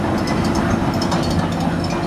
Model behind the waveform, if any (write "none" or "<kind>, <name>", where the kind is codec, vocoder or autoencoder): none